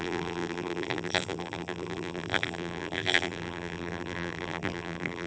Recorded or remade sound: remade